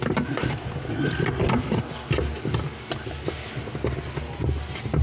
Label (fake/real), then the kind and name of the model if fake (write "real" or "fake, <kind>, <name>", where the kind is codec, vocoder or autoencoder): real